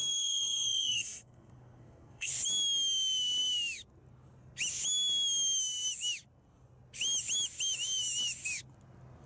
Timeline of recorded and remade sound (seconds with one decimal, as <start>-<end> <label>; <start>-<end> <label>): 0.0-2.3 remade; 2.3-9.3 recorded